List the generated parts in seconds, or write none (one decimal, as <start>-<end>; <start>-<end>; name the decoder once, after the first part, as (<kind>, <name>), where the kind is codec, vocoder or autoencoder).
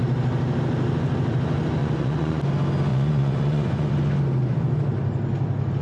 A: 1.8-2.4 (vocoder, Vocos); 2.9-3.9